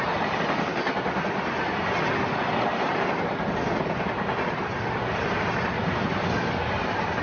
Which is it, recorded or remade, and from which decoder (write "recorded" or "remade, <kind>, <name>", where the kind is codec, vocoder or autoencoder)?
recorded